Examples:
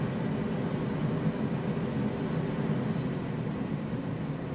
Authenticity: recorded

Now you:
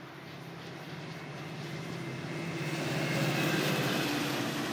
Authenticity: recorded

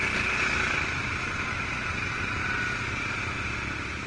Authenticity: recorded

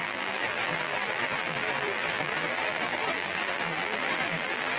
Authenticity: remade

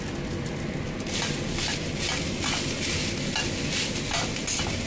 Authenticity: recorded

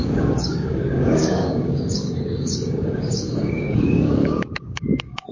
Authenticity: remade